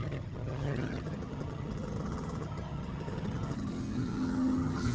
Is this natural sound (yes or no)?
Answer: no